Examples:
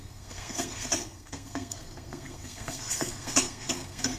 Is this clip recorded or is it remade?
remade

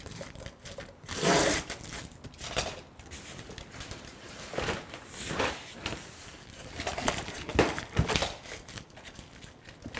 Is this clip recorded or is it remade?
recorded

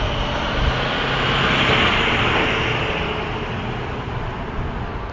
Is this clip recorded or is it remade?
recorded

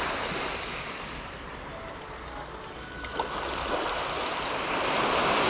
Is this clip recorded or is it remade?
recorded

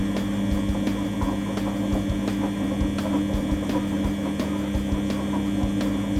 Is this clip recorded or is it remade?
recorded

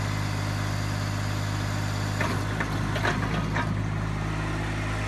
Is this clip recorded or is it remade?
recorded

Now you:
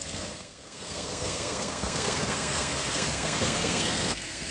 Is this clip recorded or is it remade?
remade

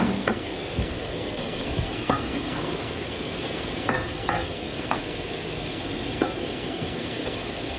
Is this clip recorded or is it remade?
remade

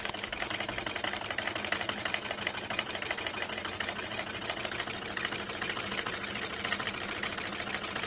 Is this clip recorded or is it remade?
recorded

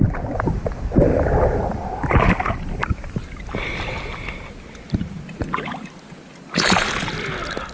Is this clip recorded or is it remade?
recorded